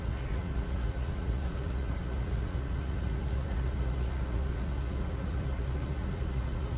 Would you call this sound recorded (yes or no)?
no